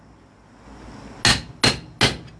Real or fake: real